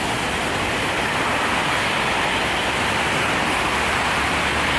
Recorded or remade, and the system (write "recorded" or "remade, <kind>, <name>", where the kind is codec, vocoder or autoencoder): recorded